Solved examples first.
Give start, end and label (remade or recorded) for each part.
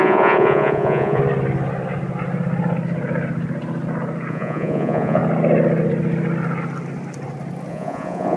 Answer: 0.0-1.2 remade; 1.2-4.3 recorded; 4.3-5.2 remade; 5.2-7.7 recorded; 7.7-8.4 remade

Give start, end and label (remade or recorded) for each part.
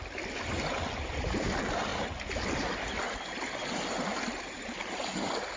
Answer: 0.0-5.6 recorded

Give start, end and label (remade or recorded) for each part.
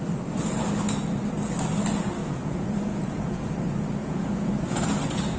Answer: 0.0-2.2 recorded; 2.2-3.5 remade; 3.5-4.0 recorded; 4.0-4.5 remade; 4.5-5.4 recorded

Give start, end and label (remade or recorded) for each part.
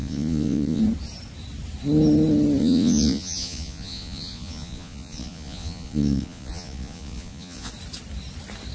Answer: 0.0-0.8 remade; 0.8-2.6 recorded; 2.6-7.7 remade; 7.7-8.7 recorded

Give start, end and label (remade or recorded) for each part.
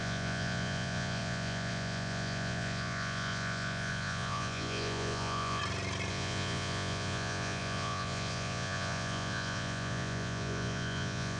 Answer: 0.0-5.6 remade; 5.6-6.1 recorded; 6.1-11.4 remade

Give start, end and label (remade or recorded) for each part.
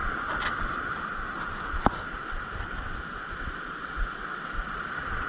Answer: 0.0-5.3 recorded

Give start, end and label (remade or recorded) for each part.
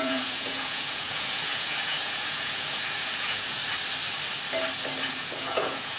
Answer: 0.0-3.6 remade; 3.6-5.0 recorded; 5.0-6.0 remade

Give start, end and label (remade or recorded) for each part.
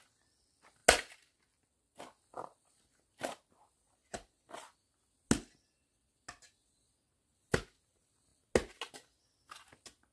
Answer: 0.0-10.1 recorded